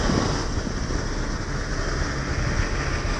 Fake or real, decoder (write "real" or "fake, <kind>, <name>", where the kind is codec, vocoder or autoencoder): real